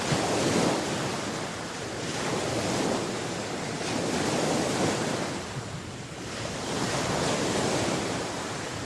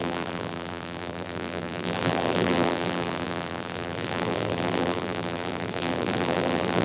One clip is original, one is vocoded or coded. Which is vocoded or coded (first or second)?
second